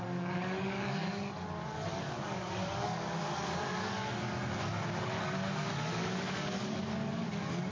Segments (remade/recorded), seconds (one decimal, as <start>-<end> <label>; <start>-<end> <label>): 0.0-1.0 remade; 1.0-1.9 recorded; 1.9-4.4 remade; 4.4-5.0 recorded; 5.0-7.7 remade